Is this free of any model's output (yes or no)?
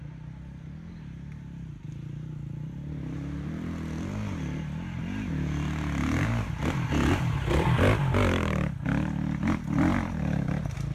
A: yes